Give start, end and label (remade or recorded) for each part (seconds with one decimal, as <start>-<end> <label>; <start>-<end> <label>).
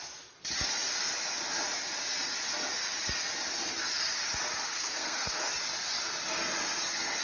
0.0-4.6 recorded; 4.6-5.5 remade; 5.5-7.2 recorded